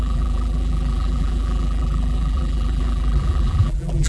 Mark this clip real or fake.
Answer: fake